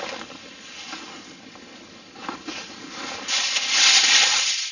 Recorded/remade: recorded